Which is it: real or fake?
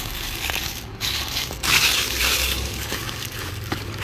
fake